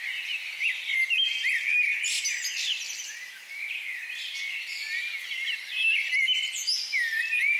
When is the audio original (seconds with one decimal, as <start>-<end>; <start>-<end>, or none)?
0.0-7.6